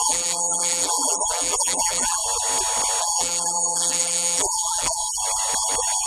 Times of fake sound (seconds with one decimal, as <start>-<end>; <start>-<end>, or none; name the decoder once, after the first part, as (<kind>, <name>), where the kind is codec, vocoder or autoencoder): 0.0-2.2 (vocoder, BigVGAN v2); 3.0-5.0